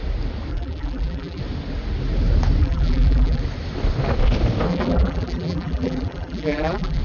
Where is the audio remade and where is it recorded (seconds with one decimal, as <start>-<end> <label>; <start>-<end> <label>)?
0.0-0.5 recorded; 0.5-1.4 remade; 1.4-2.6 recorded; 2.6-3.4 remade; 3.4-4.7 recorded; 4.7-7.0 remade